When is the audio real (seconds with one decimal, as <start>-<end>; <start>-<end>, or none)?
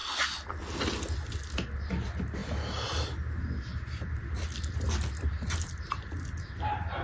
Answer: 0.0-7.0